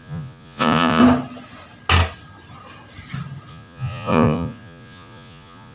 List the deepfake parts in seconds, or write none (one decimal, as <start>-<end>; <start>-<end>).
0.0-1.0; 3.5-5.7

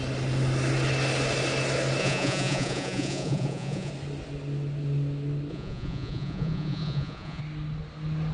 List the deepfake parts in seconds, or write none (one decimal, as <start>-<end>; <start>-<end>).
2.0-3.9; 5.5-7.4

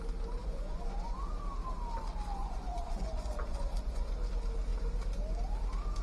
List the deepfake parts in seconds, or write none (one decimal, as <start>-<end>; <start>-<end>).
0.4-1.3; 2.4-4.1